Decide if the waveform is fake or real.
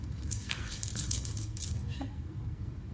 fake